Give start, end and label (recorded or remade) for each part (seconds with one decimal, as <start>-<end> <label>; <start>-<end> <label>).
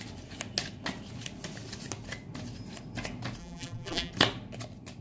0.0-3.4 recorded; 3.4-4.1 remade; 4.1-5.0 recorded